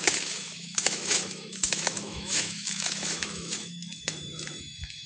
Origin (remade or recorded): remade